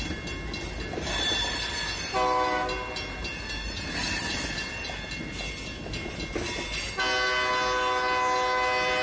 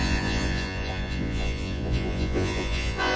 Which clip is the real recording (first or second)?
first